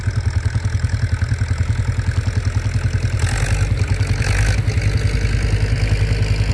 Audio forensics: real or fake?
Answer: real